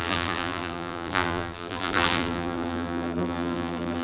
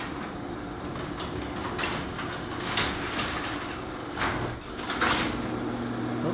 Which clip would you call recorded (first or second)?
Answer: second